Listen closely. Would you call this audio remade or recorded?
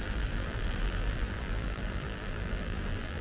remade